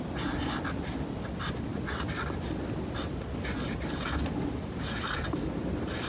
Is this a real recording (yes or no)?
yes